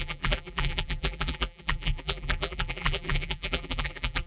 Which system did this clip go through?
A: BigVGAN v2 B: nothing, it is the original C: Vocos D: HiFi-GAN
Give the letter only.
A